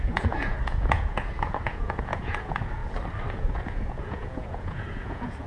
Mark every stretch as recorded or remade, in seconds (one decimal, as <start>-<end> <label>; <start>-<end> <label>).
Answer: 0.0-2.8 remade; 2.8-3.3 recorded; 3.3-5.5 remade